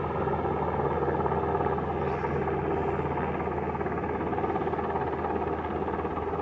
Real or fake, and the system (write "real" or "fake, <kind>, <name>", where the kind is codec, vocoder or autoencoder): real